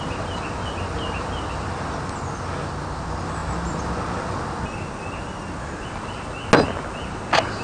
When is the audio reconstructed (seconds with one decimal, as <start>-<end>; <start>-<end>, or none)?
none